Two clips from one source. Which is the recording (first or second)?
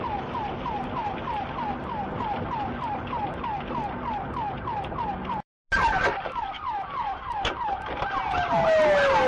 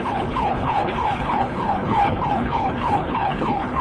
first